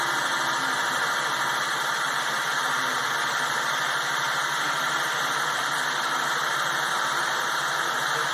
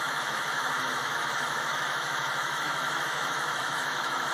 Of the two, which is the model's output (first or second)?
second